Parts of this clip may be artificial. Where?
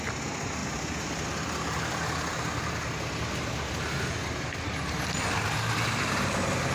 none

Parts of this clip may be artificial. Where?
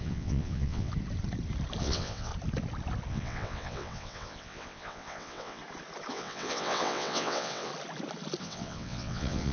0.0-0.9 (vocoder, WaveNeXt); 1.8-2.3; 3.1-5.6; 6.1-7.7; 8.4-9.5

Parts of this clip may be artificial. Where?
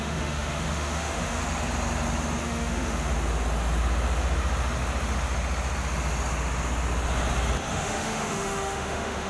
0.0-1.4 (autoencoder, DAC-VAE); 2.4-3.1; 7.7-9.3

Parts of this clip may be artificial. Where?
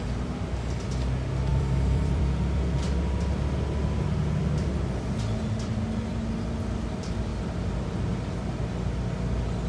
1.5-2.2 (vocoder, BigVGAN v2); 7.3-8.1